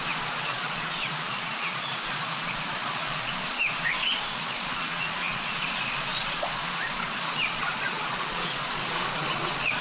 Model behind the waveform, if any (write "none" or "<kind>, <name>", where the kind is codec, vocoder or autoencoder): vocoder, Vocos